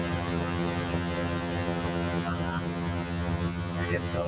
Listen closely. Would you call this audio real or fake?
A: fake